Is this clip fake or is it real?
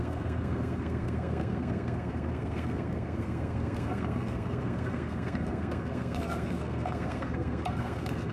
fake